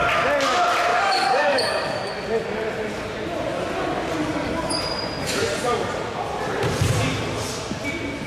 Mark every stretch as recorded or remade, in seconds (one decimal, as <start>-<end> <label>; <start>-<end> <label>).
0.0-0.9 recorded; 0.9-2.1 remade; 2.1-4.2 recorded; 4.2-4.8 remade; 4.8-8.3 recorded